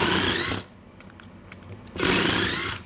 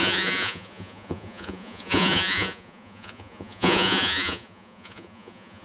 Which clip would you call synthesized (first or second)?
second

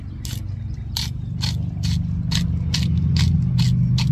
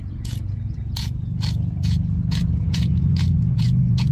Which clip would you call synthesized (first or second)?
second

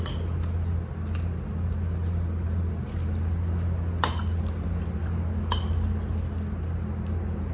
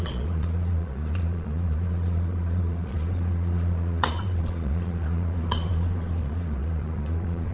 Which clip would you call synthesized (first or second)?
second